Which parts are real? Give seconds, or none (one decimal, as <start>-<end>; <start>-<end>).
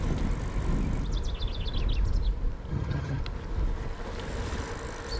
0.0-2.7; 3.2-5.2